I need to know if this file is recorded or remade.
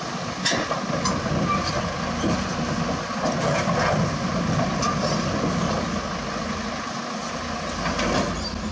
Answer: recorded